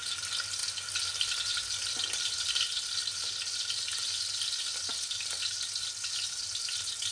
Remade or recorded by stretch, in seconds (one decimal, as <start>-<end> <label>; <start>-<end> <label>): 0.0-7.1 recorded